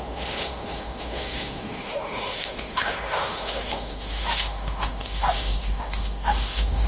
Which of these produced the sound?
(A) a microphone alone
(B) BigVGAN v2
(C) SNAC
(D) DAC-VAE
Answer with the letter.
D